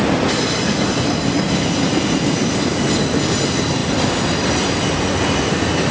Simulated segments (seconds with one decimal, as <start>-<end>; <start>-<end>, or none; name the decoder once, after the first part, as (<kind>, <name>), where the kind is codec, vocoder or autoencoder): none

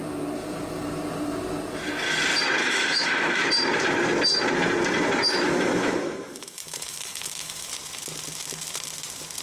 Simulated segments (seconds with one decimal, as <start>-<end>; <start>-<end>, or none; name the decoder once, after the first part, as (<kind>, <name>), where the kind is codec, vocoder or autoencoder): 2.6-3.4 (autoencoder, DAC-VAE); 5.3-7.7

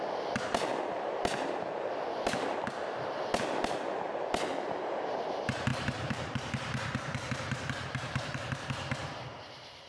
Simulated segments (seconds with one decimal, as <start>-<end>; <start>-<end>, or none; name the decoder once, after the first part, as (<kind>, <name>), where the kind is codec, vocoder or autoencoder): 5.7-9.9 (vocoder, BigVGAN v2)

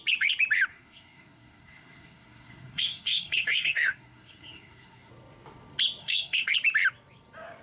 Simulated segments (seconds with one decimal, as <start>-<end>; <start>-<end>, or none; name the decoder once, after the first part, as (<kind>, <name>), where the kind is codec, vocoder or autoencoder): 0.7-5.1 (codec, SNAC); 6.0-6.5

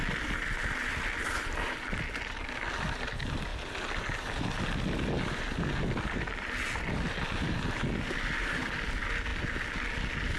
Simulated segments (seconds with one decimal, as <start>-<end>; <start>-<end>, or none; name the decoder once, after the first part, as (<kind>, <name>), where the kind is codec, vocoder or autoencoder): 0.0-1.0 (vocoder, BigVGAN v2)

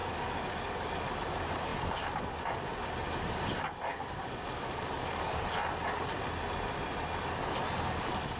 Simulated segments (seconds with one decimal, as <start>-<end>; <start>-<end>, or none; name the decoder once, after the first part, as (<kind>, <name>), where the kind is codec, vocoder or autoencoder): 0.0-0.9 (codec, DAC); 3.9-5.4

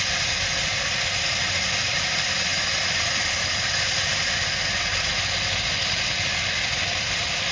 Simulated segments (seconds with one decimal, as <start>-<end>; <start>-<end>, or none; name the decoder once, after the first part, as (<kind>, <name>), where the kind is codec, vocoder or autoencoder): none

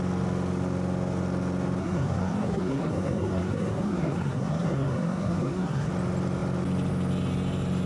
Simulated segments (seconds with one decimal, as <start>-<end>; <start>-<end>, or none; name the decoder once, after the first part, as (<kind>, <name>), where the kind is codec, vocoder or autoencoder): 1.8-5.9 (codec, SNAC)